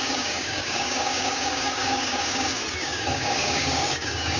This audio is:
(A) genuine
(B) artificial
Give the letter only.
B